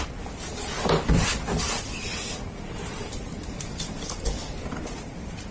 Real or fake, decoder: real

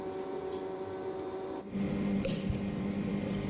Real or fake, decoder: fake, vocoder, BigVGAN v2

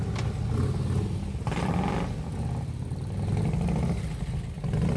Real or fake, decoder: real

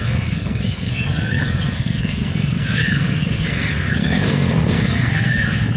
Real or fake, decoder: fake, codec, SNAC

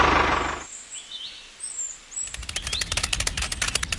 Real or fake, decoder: real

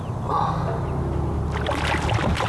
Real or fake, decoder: real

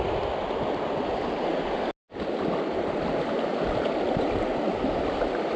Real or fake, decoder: real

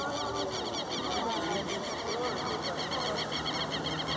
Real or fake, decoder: real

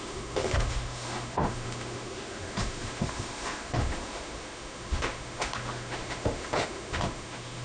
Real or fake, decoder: fake, autoencoder, DAC-VAE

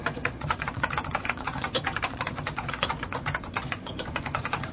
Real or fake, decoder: fake, vocoder, Vocos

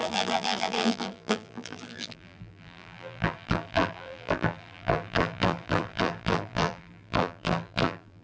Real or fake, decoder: fake, vocoder, BigVGAN v2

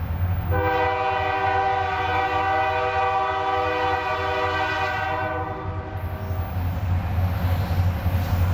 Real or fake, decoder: real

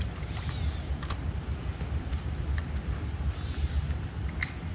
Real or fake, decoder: real